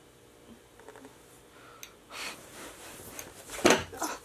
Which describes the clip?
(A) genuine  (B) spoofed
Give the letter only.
A